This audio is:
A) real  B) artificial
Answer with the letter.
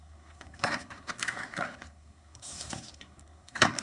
B